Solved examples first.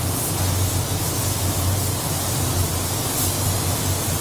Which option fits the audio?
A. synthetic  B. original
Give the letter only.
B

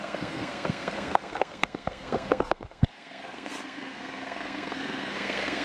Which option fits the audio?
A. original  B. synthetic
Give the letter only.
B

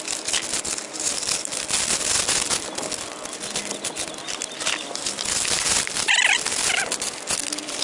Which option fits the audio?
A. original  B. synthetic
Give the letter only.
A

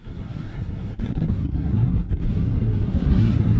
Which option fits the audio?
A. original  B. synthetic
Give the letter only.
B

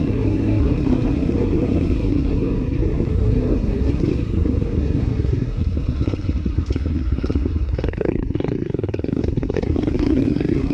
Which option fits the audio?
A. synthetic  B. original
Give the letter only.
A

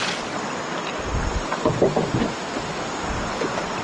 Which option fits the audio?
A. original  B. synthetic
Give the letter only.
A